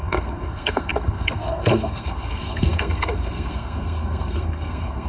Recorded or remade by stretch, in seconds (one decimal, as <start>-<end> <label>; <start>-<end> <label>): 0.0-5.1 remade